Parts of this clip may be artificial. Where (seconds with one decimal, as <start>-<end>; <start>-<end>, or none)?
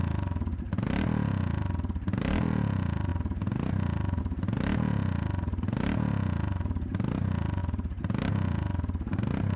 none